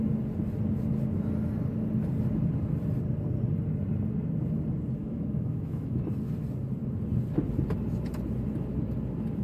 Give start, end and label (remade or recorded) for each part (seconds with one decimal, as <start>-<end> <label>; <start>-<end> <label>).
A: 0.0-5.0 recorded; 5.0-6.0 remade; 6.0-9.4 recorded